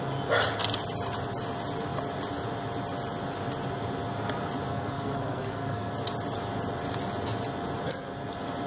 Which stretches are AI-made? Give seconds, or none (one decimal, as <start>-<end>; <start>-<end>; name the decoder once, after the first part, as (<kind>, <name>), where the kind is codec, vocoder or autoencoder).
4.7-5.9 (codec, SNAC)